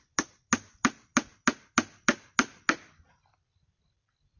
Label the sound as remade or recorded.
recorded